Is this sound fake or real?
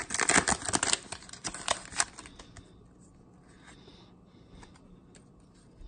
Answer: real